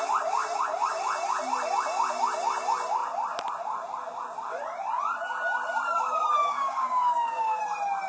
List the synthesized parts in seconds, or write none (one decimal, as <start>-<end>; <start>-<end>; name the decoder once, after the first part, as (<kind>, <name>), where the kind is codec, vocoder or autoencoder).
6.4-7.6 (codec, DAC)